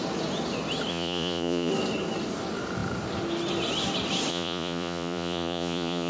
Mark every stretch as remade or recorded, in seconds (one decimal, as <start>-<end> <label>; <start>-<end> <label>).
0.0-0.9 recorded; 0.9-1.7 remade; 1.7-4.3 recorded; 4.3-6.1 remade